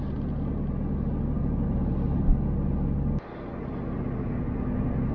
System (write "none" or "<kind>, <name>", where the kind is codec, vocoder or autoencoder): none